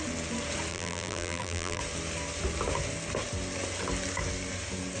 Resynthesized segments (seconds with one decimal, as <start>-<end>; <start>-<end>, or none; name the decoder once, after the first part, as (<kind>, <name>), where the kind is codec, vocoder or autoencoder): 0.7-1.8 (vocoder, BigVGAN v2)